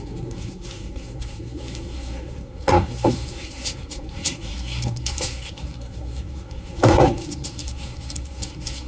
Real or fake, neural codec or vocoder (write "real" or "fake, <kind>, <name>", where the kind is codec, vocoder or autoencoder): fake, codec, SNAC